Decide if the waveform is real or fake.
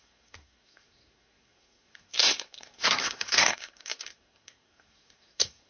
fake